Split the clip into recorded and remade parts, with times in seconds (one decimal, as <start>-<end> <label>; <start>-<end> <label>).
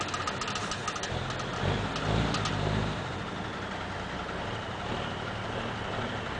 0.0-6.4 recorded